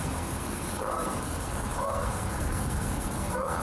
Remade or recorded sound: remade